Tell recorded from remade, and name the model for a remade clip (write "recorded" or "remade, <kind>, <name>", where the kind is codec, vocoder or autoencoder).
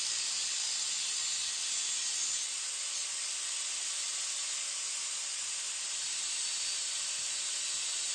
recorded